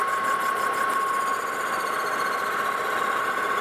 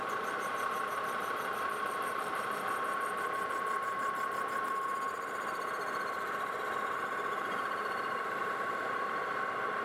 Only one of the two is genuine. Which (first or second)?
first